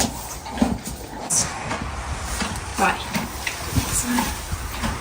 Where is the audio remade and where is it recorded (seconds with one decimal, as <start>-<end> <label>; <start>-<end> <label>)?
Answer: 0.0-1.2 recorded; 1.2-1.7 remade; 1.7-5.0 recorded